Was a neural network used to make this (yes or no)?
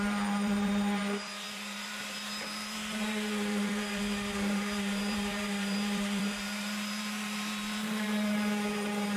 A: yes